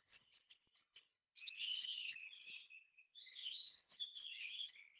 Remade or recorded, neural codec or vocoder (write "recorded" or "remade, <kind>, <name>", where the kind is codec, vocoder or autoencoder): remade, codec, HILCodec